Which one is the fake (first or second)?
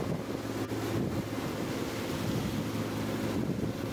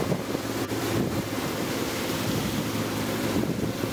second